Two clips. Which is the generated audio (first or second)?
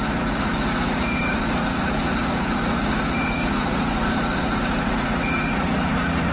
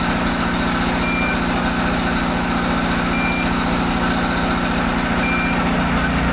first